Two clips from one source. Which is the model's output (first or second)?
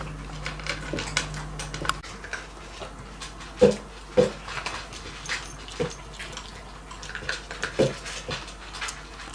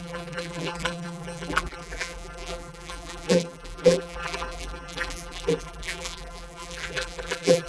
second